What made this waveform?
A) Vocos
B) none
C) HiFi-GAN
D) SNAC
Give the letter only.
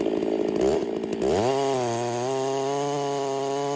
B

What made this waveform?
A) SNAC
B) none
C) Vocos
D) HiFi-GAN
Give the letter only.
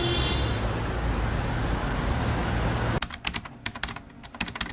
B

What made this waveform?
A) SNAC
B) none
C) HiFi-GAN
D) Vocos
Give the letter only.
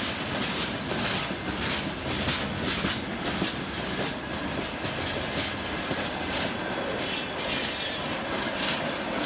B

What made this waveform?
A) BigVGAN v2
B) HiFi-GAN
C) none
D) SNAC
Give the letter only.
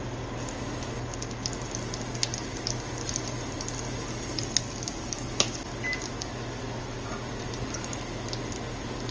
C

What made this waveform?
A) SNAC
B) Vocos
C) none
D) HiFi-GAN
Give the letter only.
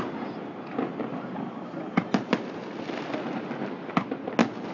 C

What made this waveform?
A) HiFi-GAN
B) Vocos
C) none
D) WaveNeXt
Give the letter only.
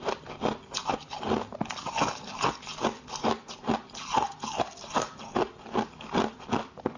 C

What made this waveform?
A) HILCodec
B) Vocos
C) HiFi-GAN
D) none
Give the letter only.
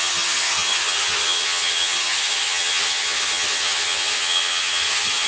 C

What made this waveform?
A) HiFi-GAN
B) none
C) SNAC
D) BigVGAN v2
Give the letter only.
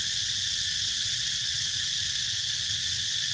B